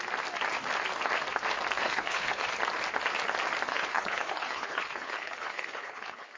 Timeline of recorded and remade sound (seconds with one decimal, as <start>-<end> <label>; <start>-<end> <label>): 0.0-1.8 recorded; 1.8-2.5 remade; 2.5-3.7 recorded; 3.7-6.4 remade